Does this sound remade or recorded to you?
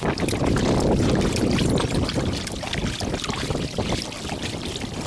recorded